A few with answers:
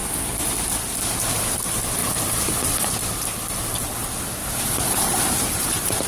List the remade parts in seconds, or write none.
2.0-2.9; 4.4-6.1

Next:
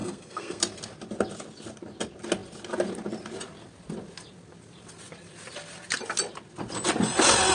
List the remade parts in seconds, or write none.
0.0-0.6

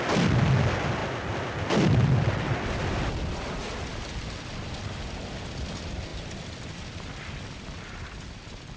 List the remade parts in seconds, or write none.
1.0-4.5; 6.1-7.7

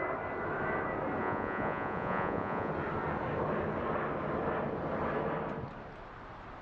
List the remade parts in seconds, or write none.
1.2-2.7